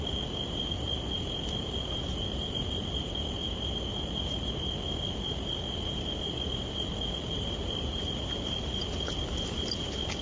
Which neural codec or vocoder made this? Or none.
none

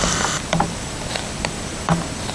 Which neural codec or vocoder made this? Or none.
vocoder, BigVGAN v2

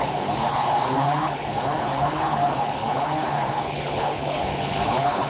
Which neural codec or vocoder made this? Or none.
codec, HILCodec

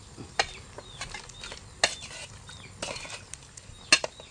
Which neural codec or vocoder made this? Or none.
none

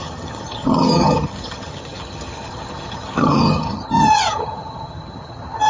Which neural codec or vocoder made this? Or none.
vocoder, HiFi-GAN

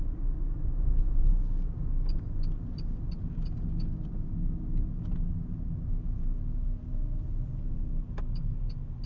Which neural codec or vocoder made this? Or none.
none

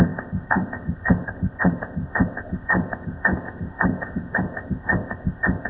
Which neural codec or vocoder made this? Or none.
codec, ZipCodec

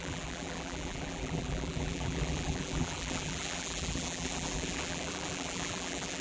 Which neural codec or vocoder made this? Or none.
vocoder, BigVGAN v2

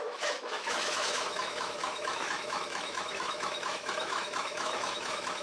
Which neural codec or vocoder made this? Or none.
autoencoder, DAC-VAE